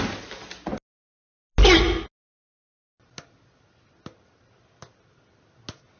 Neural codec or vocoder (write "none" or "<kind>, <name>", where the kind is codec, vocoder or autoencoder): none